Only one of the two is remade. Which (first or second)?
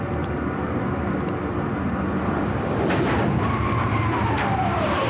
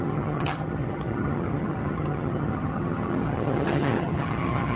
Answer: second